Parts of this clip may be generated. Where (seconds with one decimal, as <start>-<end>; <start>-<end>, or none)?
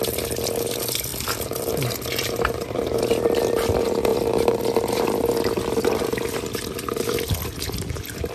1.1-3.0